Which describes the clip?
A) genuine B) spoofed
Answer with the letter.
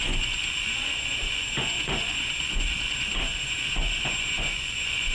B